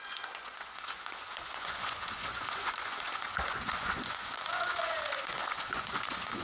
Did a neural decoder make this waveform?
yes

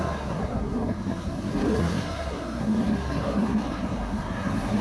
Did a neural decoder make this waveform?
yes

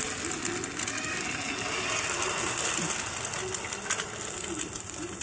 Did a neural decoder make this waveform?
no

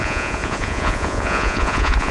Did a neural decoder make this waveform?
yes